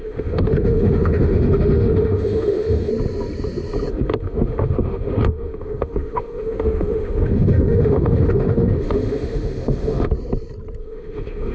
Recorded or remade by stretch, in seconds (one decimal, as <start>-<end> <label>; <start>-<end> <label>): 0.0-2.9 remade; 2.9-3.9 recorded; 3.9-10.1 remade; 10.1-10.8 recorded; 10.8-11.5 remade